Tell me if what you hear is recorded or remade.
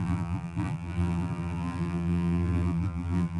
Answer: remade